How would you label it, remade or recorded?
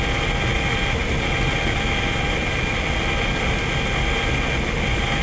recorded